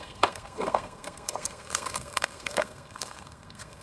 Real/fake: fake